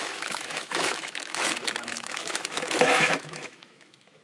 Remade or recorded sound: remade